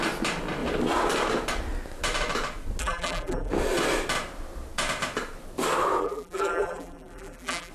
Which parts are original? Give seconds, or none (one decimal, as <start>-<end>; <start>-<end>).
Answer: 0.0-2.8; 3.5-6.0